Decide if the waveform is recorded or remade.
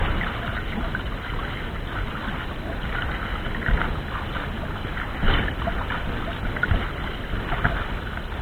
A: recorded